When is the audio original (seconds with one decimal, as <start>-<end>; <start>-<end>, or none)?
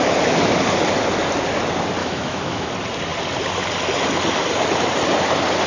0.0-2.0; 2.7-5.7